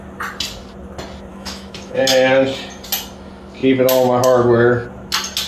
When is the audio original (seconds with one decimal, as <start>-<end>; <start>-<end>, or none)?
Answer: 0.0-1.3; 2.0-5.5